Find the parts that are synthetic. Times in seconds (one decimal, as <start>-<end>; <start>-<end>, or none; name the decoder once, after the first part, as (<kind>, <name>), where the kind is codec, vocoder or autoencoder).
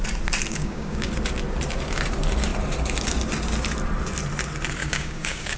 0.5-1.1 (codec, DAC); 4.8-5.6